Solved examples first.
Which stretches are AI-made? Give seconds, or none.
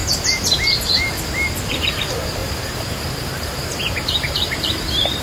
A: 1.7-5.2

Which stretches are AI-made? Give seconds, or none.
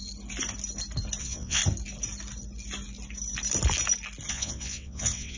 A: 1.2-1.6; 4.3-5.4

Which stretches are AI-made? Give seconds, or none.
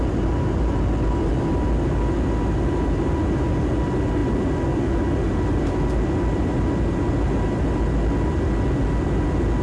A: none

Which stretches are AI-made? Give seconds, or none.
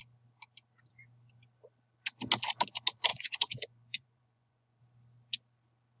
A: 3.1-4.8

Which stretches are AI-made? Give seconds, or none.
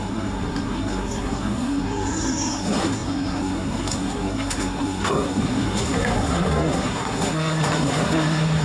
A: 0.0-8.6